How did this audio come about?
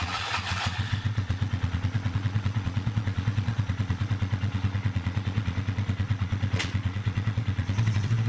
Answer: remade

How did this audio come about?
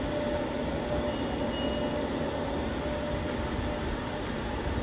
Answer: recorded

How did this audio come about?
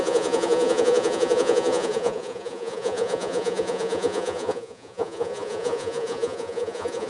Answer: remade